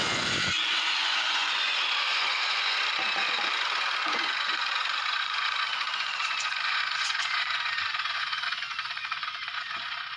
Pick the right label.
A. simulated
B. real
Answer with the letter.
A